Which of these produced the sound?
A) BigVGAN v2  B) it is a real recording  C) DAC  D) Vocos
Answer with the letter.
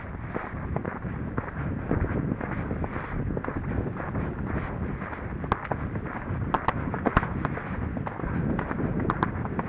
B